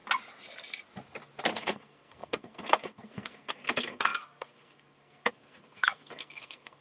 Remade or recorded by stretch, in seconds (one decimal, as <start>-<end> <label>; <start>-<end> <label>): 0.0-1.5 recorded; 1.5-6.8 remade